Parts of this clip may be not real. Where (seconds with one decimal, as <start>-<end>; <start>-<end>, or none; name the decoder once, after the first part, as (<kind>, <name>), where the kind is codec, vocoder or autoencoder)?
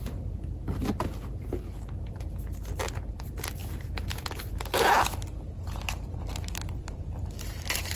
none